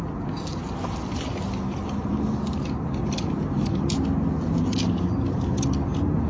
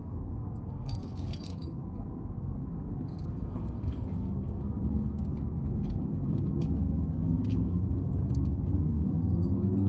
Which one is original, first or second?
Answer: first